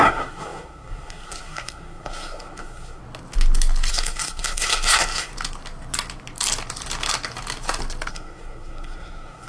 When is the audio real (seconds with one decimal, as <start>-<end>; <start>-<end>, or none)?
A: 3.0-3.9; 5.3-8.1